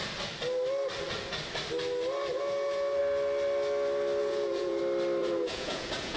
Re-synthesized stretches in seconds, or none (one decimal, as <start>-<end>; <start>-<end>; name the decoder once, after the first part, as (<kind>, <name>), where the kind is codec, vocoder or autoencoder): 2.3-3.0 (vocoder, Vocos); 4.2-4.8; 5.2-6.2